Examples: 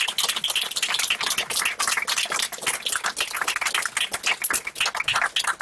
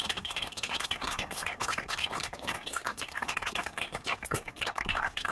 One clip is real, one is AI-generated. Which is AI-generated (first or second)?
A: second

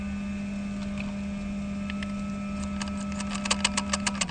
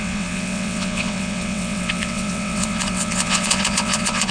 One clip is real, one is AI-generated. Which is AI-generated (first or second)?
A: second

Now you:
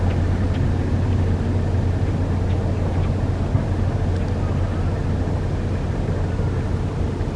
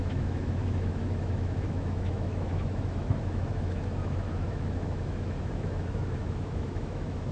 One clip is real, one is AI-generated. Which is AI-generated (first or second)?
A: second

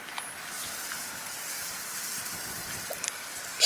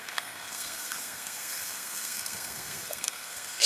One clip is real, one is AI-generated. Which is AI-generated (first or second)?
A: second